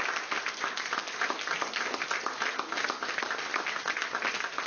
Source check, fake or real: real